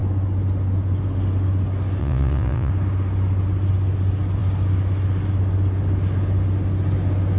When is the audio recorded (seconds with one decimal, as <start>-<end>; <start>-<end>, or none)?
0.0-2.0; 2.7-7.4